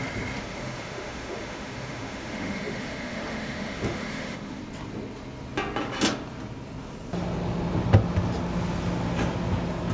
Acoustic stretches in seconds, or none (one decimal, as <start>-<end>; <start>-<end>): 0.0-0.4; 4.6-9.9